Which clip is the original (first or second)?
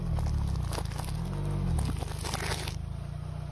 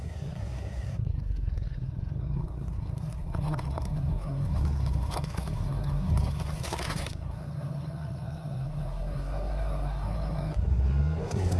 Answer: first